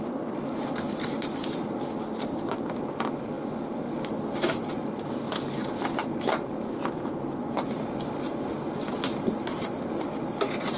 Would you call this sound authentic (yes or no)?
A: yes